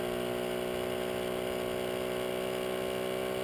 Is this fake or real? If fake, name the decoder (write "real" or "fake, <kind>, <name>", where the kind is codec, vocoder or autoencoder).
real